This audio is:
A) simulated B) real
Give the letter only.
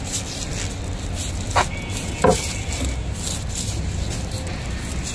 B